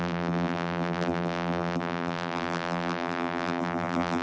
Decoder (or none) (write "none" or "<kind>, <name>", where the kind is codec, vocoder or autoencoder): vocoder, BigVGAN v2